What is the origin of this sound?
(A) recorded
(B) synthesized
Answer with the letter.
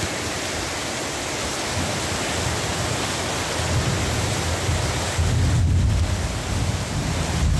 A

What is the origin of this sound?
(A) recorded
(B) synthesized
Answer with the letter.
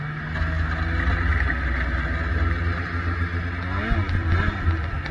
A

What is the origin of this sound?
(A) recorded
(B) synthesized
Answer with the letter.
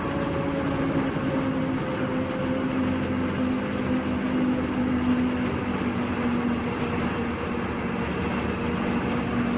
A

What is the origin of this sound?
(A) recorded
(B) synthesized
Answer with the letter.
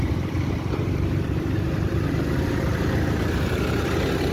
A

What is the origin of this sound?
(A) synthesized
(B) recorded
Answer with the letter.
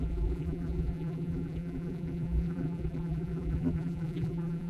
A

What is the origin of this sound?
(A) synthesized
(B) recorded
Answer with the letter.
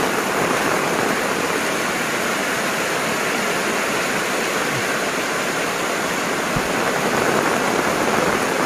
A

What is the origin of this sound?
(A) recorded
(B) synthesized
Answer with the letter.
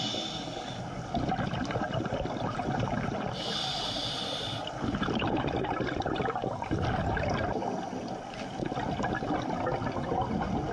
A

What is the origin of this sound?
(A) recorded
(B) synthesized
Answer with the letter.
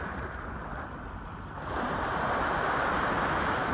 A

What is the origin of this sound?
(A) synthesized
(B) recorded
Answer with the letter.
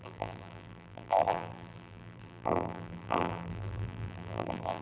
A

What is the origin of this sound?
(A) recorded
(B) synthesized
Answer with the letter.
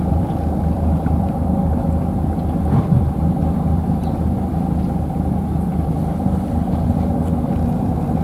B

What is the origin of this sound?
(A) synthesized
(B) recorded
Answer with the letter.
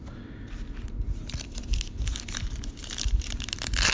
B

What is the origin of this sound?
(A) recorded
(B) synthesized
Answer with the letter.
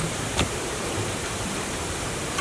B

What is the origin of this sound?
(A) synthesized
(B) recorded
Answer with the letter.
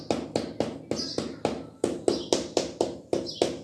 B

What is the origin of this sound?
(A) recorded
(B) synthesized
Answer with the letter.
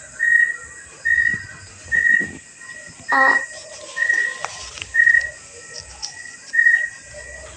A